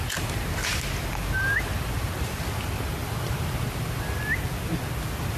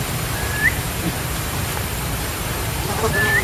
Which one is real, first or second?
first